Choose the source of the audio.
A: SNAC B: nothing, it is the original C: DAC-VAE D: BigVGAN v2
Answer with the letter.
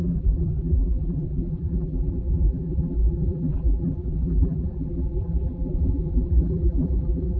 D